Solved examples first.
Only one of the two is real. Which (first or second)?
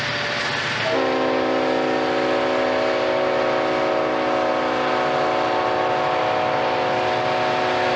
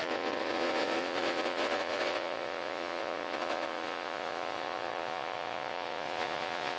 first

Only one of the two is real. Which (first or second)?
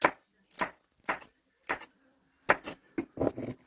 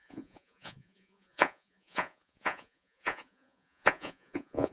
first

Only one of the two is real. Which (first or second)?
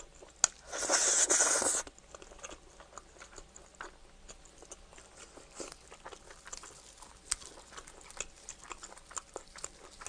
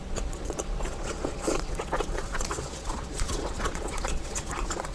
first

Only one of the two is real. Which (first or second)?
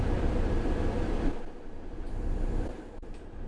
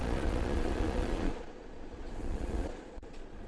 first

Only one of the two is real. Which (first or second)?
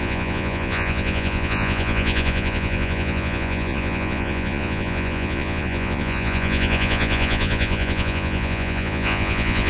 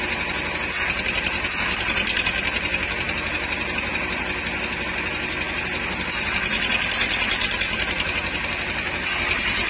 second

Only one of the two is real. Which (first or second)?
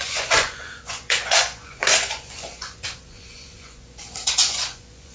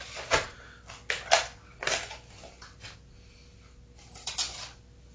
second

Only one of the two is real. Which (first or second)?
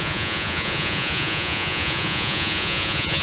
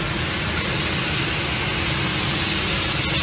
second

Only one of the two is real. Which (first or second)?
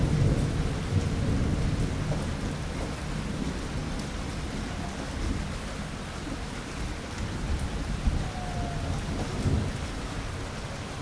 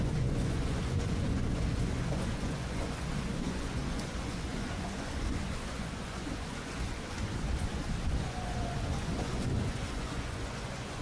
first